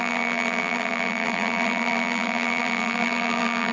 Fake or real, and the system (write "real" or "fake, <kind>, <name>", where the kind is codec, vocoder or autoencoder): fake, vocoder, BigVGAN v2